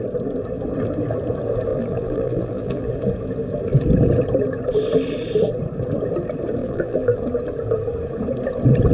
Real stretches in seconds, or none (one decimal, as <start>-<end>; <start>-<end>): 0.0-1.7; 2.9-6.6; 7.2-8.9